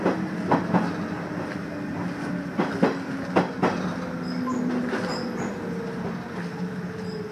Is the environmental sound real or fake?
real